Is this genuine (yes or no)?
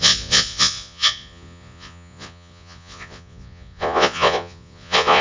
no